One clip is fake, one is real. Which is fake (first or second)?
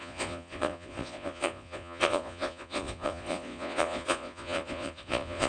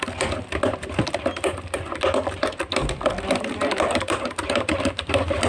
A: first